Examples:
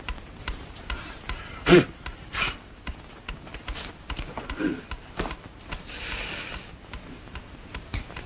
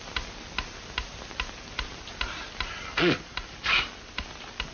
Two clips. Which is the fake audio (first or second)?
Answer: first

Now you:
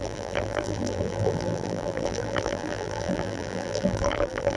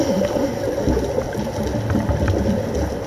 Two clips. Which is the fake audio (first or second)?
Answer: first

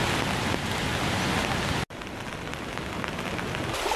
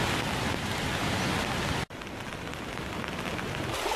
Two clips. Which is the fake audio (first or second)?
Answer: second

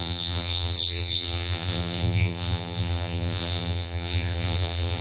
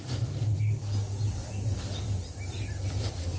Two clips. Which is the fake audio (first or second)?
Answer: first